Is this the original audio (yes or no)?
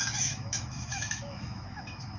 no